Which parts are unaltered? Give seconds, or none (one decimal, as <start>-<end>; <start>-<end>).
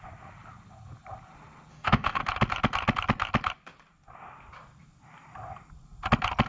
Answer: 0.0-1.7; 2.2-6.5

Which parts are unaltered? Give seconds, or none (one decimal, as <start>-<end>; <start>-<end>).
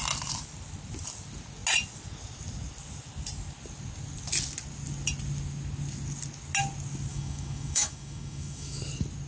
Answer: 0.0-7.1; 8.8-9.3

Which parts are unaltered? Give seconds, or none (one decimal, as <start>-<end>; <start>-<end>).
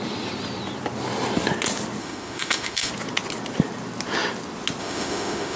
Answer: 0.0-2.0; 2.9-4.8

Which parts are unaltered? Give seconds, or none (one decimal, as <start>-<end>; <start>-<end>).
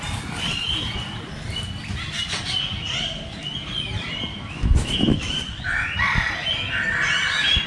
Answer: 0.0-4.3; 5.3-7.7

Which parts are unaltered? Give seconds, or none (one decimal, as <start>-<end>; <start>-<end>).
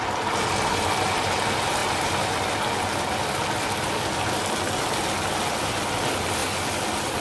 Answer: 0.0-7.2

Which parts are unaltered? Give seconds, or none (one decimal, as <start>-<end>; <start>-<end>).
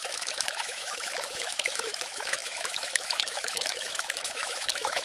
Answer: none